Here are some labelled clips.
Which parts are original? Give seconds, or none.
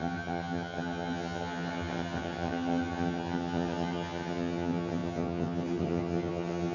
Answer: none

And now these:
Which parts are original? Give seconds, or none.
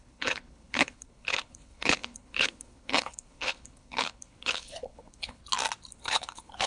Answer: 5.4-5.9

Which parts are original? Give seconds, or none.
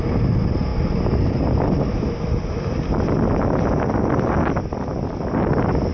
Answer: 0.0-5.9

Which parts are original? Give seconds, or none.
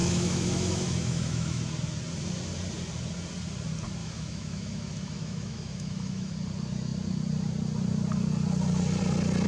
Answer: 1.6-4.0; 6.3-9.5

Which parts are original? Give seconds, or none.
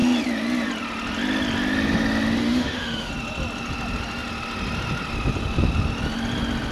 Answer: 0.0-2.4; 3.1-6.7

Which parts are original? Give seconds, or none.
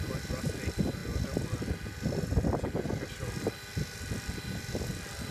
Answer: 0.0-5.3